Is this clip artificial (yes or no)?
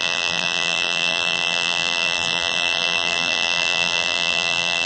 yes